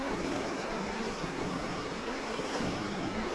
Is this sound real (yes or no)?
no